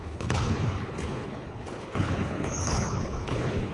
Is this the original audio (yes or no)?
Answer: no